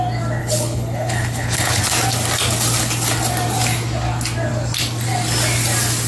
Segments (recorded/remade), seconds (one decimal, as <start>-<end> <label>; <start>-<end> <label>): 0.0-0.4 recorded; 0.4-1.8 remade; 1.8-6.1 recorded